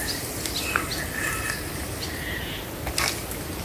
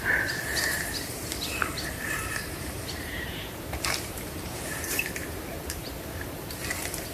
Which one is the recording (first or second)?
first